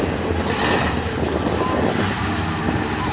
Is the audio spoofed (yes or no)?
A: yes